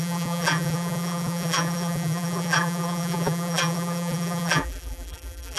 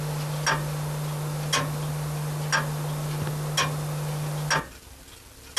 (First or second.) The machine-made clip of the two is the first